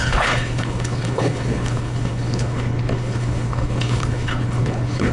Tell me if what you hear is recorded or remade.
remade